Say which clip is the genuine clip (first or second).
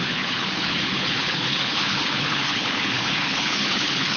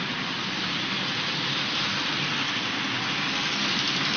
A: second